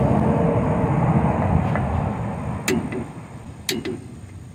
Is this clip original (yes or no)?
yes